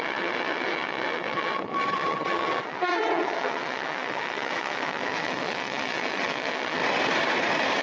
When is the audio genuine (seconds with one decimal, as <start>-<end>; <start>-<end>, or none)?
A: 6.8-7.8